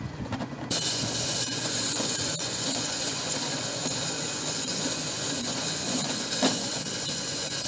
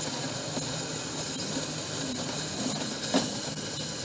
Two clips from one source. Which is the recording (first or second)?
second